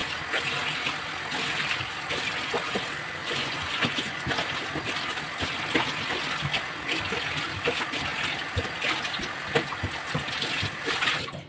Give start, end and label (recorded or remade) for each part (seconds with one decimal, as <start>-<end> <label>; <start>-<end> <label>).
0.0-3.2 recorded; 3.2-4.3 remade; 4.3-11.5 recorded